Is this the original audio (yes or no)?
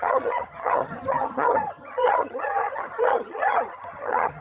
no